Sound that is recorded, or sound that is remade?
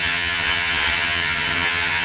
remade